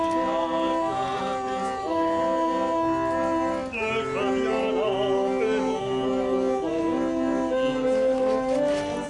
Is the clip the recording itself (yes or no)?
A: yes